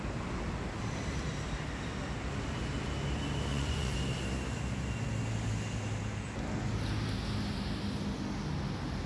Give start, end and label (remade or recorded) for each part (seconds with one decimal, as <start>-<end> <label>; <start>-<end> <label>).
0.0-3.5 recorded; 3.5-4.0 remade; 4.0-9.1 recorded